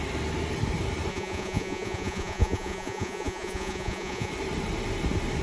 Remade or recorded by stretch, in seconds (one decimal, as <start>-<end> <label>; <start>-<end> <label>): 0.0-1.1 recorded; 1.1-4.3 remade; 4.3-5.4 recorded